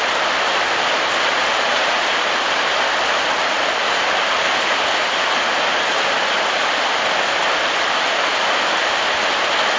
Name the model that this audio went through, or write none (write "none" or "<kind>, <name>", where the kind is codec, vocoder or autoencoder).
none